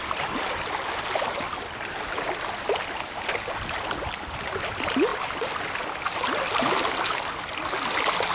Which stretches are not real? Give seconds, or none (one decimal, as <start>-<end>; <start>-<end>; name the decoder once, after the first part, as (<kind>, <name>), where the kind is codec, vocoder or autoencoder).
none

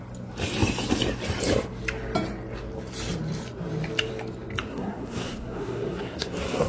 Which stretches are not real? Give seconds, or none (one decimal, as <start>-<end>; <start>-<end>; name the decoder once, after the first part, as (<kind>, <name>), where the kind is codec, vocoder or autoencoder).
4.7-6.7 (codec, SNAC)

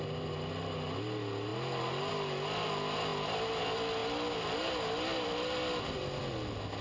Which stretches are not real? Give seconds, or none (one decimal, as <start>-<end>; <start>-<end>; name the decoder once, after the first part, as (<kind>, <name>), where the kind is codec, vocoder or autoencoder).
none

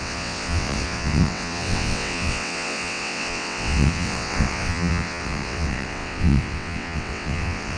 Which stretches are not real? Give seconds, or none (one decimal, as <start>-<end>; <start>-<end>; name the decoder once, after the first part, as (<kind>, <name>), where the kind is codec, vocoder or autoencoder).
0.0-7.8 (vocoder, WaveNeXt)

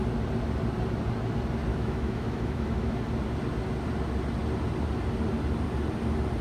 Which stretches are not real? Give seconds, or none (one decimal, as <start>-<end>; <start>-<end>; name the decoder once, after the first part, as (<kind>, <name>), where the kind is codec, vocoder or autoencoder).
1.7-2.9 (autoencoder, DAC-VAE)

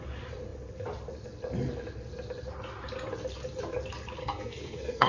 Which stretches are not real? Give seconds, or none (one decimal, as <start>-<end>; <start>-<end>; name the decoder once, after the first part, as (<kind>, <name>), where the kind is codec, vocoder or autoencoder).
4.2-5.1 (codec, SNAC)